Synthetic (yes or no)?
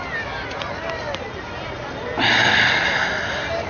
no